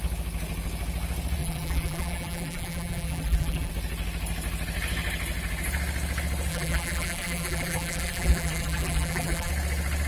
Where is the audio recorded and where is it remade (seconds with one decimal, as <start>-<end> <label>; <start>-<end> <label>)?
0.0-1.4 recorded; 1.4-3.7 remade; 3.7-6.5 recorded; 6.5-9.5 remade; 9.5-10.1 recorded